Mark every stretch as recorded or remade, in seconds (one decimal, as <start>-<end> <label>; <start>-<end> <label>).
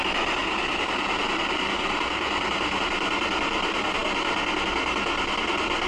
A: 0.0-0.4 recorded; 0.4-2.8 remade; 2.8-5.9 recorded